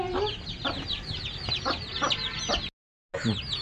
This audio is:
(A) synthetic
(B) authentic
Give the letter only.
B